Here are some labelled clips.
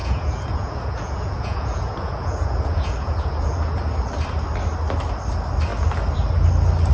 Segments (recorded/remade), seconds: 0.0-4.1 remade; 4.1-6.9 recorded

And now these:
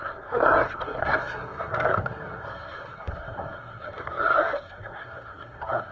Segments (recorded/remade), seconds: 0.0-5.9 remade

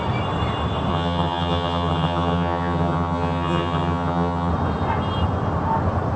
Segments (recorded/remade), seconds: 0.0-0.9 recorded; 0.9-4.5 remade; 4.5-6.2 recorded

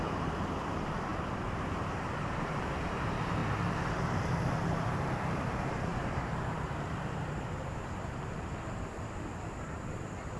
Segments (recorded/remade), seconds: 0.0-3.4 remade; 3.4-4.5 recorded; 4.5-10.4 remade

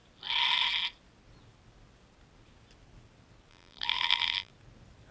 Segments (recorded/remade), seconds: 0.0-3.5 recorded; 3.5-4.5 remade; 4.5-5.1 recorded

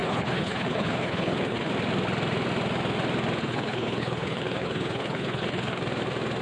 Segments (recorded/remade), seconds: 0.0-1.7 remade; 1.7-3.4 recorded; 3.4-5.8 remade; 5.8-6.4 recorded